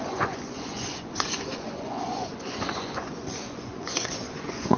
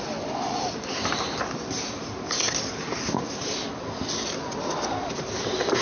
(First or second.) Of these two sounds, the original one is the second